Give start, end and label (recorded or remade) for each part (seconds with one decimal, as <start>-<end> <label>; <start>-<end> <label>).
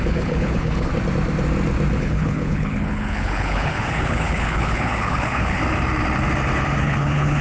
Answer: 0.0-0.9 remade; 0.9-2.0 recorded; 2.0-5.6 remade; 5.6-6.8 recorded; 6.8-7.4 remade